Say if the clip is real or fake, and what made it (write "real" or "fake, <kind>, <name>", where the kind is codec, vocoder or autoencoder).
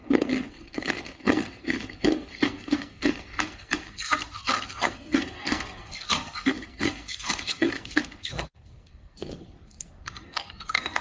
fake, codec, SNAC